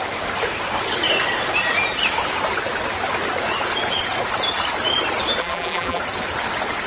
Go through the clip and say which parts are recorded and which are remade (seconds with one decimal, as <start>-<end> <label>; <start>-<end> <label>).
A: 0.0-5.4 recorded; 5.4-6.0 remade; 6.0-6.9 recorded